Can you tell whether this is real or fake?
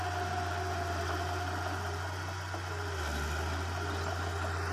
real